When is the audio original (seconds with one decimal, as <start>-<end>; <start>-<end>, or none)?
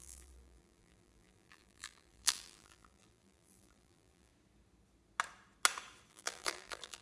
4.3-6.1